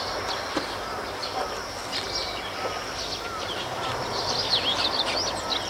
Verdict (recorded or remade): recorded